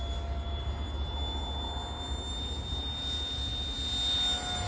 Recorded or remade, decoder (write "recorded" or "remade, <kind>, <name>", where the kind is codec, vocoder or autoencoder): recorded